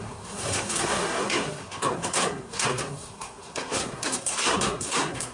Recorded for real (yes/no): no